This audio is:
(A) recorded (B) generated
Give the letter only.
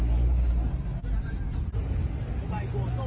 A